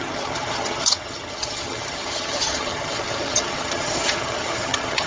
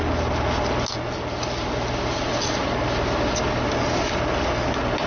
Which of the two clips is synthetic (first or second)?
first